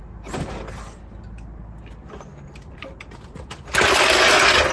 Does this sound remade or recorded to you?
recorded